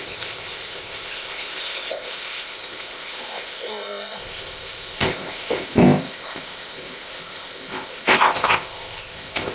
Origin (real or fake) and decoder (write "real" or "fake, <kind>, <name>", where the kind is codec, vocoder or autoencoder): fake, codec, ZipCodec